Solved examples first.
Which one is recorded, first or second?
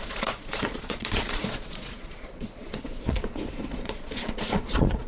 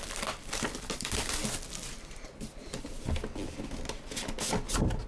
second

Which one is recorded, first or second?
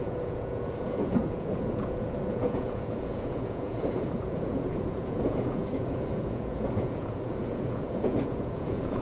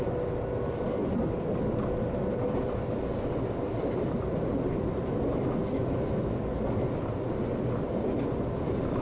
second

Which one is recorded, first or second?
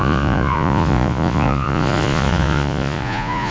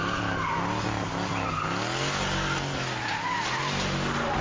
second